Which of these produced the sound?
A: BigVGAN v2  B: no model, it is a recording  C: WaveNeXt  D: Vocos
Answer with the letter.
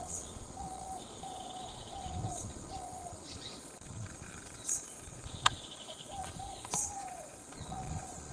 D